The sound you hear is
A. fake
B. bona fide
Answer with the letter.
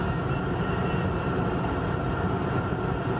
B